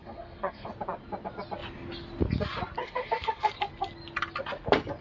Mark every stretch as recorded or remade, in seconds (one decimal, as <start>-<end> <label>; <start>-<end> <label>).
0.0-0.7 remade; 0.7-2.8 recorded; 2.8-3.5 remade; 3.5-5.0 recorded